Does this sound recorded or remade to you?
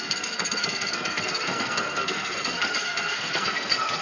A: remade